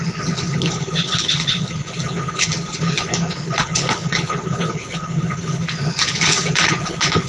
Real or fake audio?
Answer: fake